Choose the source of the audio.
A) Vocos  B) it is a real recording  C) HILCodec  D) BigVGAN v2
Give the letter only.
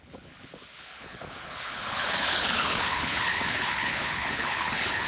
C